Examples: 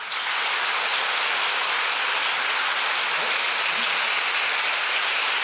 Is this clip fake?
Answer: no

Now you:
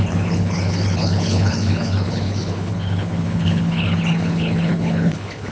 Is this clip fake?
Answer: yes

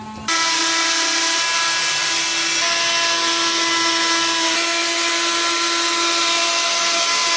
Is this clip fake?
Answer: no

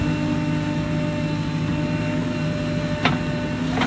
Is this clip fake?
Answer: no